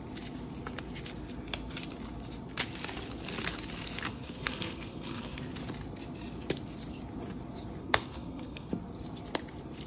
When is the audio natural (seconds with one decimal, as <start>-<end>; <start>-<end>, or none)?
0.0-4.1; 5.4-7.8; 8.7-9.9